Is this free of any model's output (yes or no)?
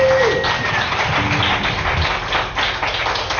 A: yes